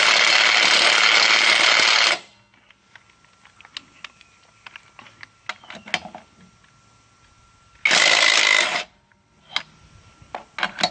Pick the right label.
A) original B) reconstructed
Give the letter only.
A